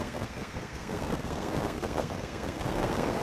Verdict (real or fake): fake